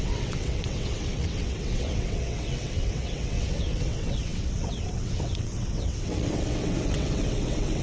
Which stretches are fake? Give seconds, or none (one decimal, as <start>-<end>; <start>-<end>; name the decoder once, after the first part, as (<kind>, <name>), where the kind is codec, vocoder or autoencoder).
0.0-7.8 (vocoder, WaveNeXt)